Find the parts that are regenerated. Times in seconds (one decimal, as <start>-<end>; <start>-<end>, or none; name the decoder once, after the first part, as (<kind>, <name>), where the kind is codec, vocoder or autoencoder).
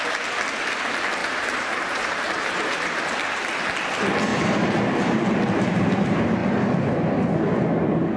1.2-3.0 (vocoder, BigVGAN v2); 4.3-5.3